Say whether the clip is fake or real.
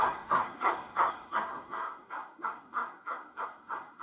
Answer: fake